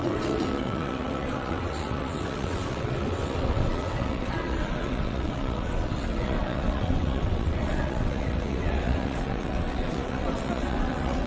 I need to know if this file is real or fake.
fake